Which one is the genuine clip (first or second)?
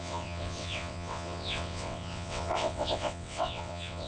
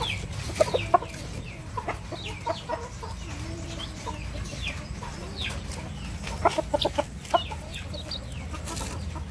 second